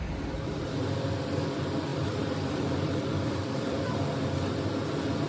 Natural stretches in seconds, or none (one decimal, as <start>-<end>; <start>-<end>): 0.0-1.9; 3.9-5.3